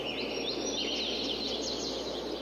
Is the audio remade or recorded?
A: recorded